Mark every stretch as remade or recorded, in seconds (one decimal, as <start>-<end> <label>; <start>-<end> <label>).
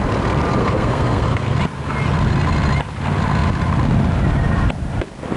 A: 0.0-0.6 recorded; 0.6-1.6 remade; 1.6-5.4 recorded